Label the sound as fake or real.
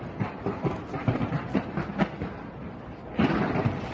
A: real